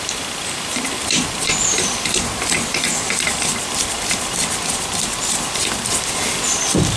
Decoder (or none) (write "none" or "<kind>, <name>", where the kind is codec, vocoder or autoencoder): vocoder, BigVGAN v2